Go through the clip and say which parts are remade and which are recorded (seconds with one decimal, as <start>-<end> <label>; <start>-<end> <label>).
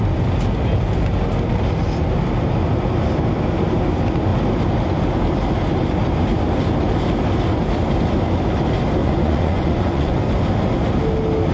0.0-9.0 recorded; 9.0-10.2 remade; 10.2-11.5 recorded